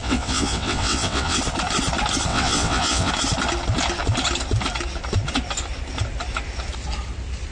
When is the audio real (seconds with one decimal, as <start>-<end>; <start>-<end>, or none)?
1.4-2.3; 3.1-7.5